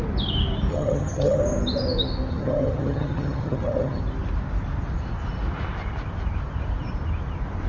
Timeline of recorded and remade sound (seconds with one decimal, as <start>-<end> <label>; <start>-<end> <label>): 0.0-0.7 recorded; 0.7-1.4 remade; 1.4-2.3 recorded; 2.3-4.0 remade; 4.0-7.7 recorded